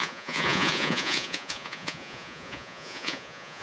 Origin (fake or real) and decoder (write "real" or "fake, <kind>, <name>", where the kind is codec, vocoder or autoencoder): fake, vocoder, Vocos